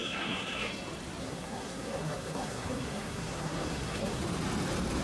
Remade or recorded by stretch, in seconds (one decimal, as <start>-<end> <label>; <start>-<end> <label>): 0.0-0.7 remade; 0.7-1.2 recorded; 1.2-4.2 remade; 4.2-5.0 recorded